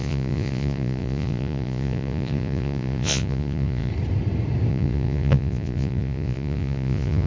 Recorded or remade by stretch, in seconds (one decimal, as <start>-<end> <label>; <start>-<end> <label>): 0.0-3.9 remade; 3.9-4.7 recorded; 4.7-7.3 remade